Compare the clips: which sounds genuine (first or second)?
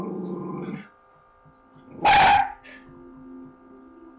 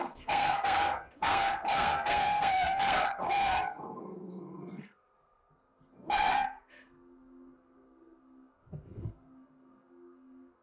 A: first